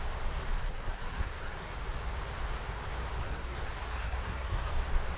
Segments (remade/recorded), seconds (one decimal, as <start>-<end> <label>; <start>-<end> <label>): 0.0-0.6 recorded; 0.6-1.7 remade; 1.7-3.2 recorded; 3.2-4.7 remade; 4.7-5.2 recorded